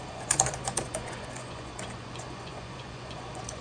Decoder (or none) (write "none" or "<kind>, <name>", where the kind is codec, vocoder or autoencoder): vocoder, Vocos